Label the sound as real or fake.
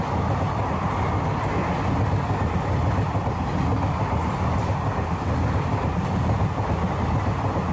real